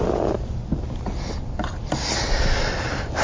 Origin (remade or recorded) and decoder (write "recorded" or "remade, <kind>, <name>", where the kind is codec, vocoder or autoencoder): recorded